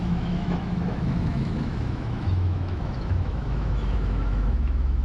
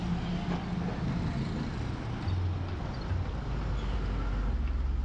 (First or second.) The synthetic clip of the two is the first